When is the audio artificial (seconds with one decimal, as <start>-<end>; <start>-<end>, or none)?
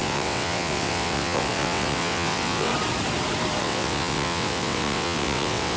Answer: 0.0-2.7; 3.6-5.8